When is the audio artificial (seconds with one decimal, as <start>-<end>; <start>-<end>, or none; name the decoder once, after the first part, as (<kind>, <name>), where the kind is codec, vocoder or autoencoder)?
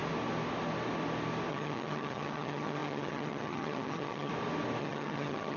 1.5-4.3 (vocoder, HiFi-GAN); 4.8-5.6